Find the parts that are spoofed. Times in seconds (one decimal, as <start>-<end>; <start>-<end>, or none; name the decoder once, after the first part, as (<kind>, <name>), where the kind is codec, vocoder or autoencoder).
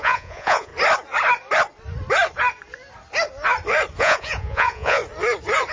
0.0-0.7 (vocoder, Vocos); 4.0-5.0